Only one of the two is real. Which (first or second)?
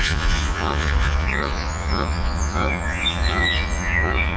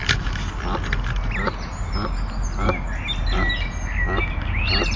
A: second